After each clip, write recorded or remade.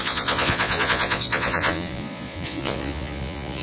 remade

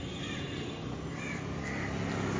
recorded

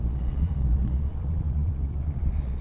remade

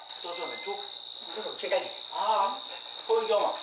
recorded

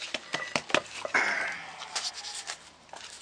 recorded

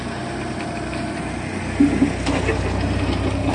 recorded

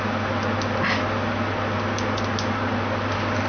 recorded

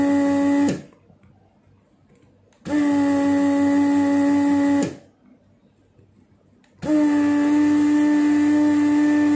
recorded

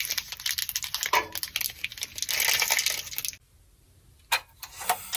recorded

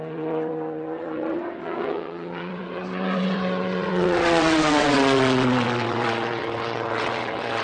remade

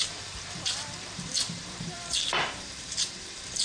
remade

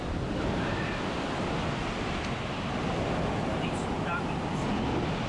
recorded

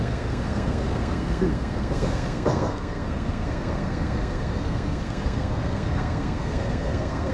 remade